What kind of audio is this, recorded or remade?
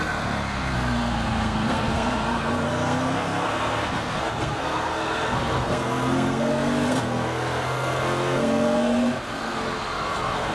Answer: remade